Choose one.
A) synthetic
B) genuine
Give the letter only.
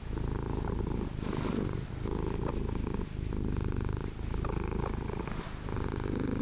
B